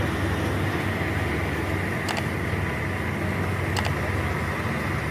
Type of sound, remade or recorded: recorded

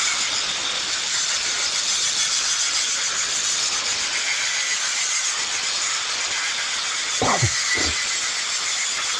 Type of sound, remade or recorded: recorded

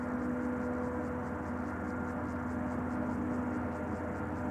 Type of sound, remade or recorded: recorded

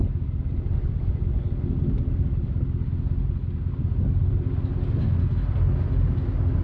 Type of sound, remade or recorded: recorded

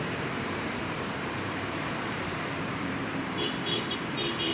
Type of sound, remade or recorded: remade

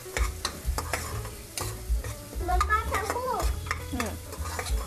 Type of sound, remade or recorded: remade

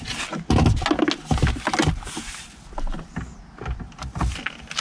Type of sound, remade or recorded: recorded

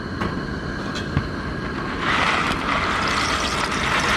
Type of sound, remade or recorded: recorded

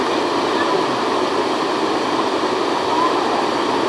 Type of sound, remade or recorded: recorded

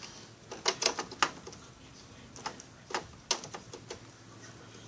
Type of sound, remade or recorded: recorded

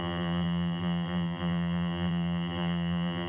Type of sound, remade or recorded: remade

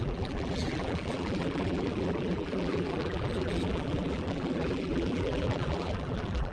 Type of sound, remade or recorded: remade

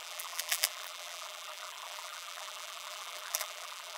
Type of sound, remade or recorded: remade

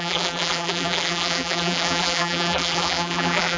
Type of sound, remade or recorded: remade